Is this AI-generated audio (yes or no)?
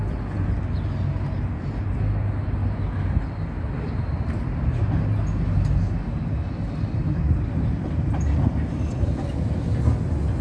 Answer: no